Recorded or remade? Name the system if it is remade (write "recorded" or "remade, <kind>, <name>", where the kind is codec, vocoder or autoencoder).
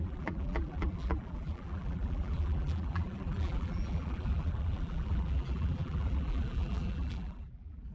remade, vocoder, BigVGAN v2